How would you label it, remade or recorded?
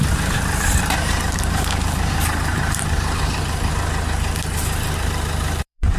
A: remade